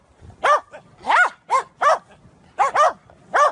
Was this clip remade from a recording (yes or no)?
no